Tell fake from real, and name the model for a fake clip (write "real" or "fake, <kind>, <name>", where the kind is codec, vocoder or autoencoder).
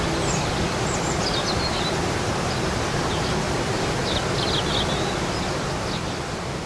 real